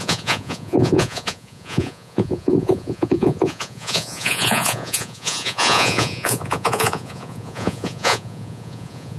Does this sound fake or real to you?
fake